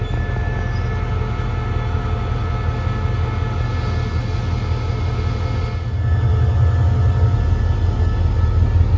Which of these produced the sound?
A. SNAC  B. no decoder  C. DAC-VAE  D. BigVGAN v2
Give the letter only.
B